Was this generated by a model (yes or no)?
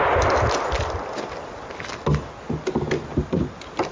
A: no